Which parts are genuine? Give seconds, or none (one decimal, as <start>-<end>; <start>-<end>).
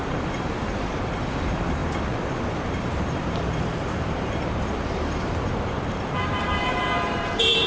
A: none